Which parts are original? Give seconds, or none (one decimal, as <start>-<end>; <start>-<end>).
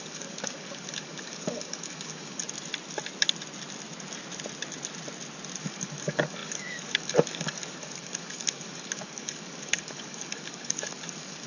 2.4-5.6